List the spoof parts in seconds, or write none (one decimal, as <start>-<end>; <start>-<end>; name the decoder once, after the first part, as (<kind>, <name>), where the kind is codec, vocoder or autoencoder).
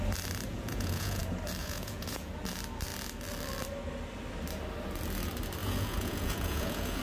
0.5-1.2 (vocoder, Vocos); 1.6-2.3; 5.6-7.0